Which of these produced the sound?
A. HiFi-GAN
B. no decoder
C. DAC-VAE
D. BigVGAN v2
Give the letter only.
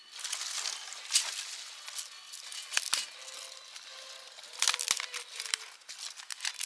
B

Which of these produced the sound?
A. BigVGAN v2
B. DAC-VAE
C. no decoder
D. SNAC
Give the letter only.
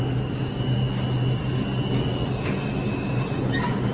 C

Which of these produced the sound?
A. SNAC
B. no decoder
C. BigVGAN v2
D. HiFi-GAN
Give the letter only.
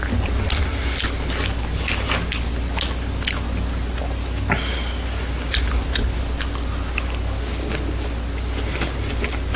B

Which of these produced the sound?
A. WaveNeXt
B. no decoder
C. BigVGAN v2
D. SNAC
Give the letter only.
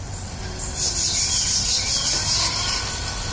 B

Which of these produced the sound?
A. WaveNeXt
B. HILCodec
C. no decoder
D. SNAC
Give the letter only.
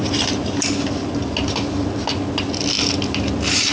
C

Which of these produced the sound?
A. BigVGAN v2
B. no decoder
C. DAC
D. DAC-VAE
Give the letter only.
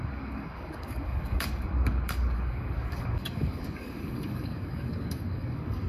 C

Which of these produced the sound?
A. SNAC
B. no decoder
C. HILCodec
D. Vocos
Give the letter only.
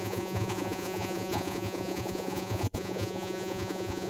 D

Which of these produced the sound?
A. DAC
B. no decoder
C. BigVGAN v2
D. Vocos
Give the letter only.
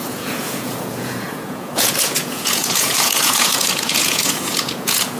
D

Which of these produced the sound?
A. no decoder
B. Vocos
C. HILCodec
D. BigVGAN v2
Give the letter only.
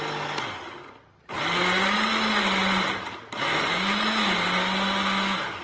A